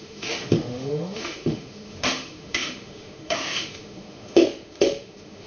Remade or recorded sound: remade